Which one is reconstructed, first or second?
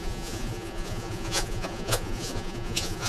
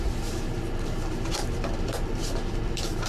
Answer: first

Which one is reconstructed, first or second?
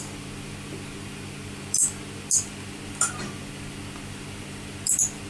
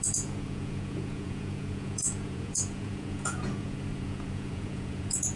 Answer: second